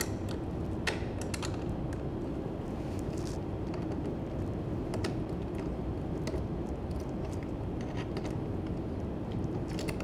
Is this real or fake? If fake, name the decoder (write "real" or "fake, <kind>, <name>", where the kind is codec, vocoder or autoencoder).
real